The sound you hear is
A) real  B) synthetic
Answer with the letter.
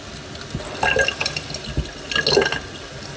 A